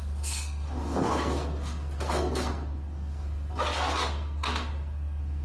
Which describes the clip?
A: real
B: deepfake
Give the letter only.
B